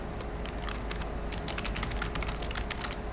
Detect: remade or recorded recorded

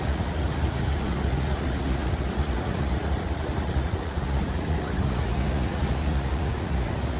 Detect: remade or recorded remade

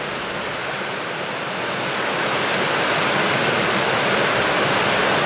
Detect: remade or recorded recorded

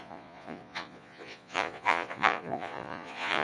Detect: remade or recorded remade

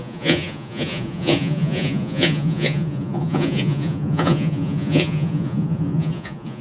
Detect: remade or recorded remade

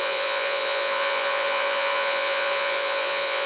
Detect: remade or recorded remade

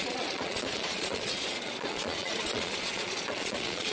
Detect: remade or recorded remade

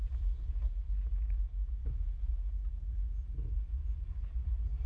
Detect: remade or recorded recorded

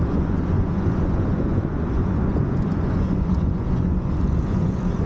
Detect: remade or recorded remade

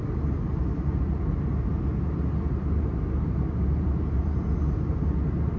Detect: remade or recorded recorded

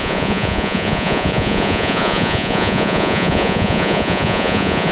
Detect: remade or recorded remade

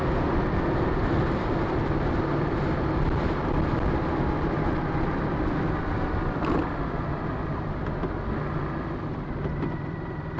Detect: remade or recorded recorded